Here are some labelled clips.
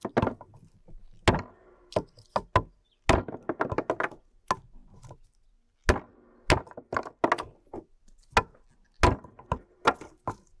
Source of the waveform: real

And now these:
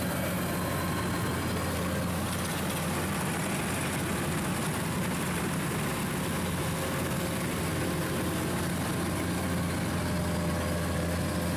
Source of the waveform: real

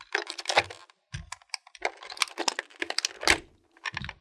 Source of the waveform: real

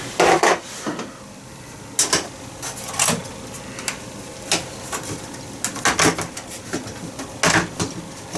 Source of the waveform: real